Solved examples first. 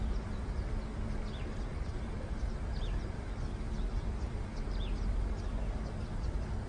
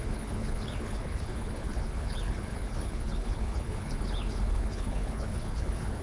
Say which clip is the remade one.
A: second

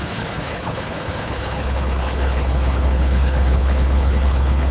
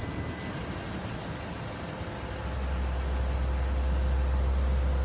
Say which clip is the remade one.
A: first